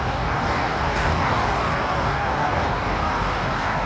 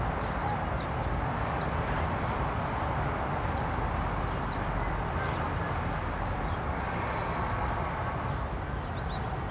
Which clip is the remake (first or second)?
first